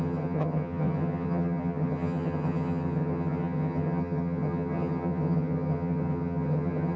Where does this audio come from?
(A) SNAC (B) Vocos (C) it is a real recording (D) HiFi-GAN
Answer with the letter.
D